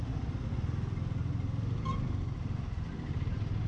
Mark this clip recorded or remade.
recorded